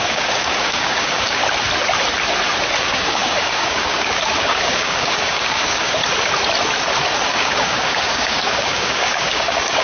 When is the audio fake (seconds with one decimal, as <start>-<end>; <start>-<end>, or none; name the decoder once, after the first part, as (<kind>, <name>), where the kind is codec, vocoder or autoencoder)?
0.0-1.4 (codec, DAC); 2.8-6.0; 7.3-9.8